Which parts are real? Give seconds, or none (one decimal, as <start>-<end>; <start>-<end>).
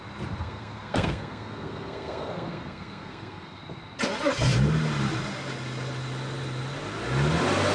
0.0-0.4; 3.6-7.7